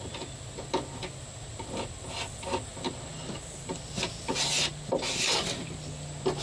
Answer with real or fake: real